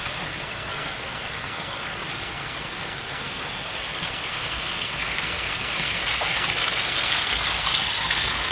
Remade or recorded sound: remade